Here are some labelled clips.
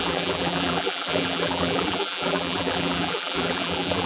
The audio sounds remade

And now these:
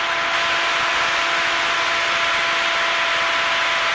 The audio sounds recorded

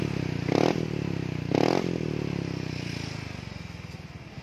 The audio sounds recorded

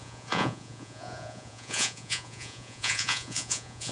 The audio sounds remade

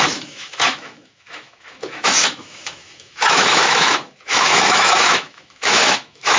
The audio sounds remade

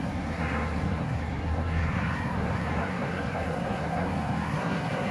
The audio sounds remade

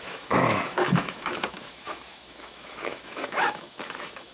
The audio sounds remade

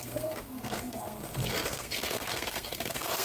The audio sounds remade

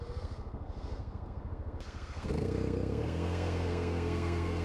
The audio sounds remade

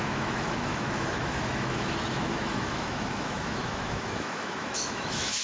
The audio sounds remade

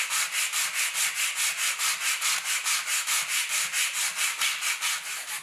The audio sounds recorded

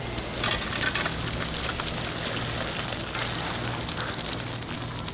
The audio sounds recorded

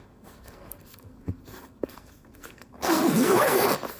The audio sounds remade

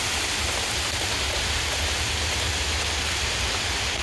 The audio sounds remade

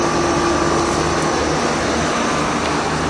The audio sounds recorded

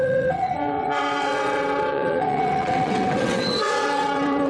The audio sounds remade